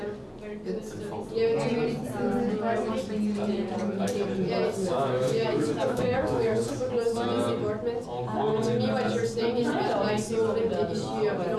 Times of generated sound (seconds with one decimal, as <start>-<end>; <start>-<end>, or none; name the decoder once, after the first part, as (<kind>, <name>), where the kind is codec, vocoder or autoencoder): 4.8-6.9 (autoencoder, DAC-VAE)